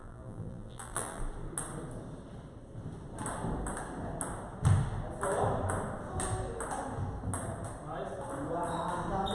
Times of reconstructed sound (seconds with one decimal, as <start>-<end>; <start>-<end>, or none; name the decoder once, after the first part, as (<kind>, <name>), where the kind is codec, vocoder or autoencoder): 0.0-1.2 (vocoder, BigVGAN v2)